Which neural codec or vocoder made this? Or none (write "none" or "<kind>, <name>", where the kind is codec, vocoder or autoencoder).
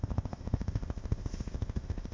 codec, ZipCodec